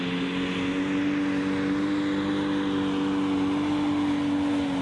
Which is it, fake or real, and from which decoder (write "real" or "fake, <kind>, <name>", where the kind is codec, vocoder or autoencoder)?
real